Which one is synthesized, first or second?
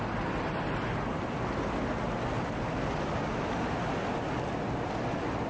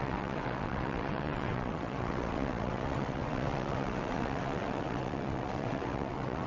second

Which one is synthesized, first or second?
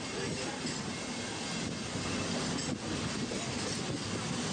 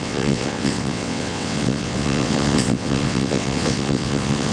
second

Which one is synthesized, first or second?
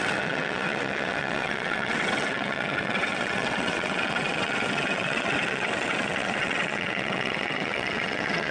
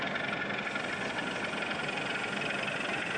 first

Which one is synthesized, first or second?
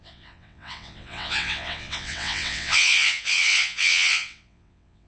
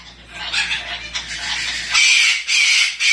first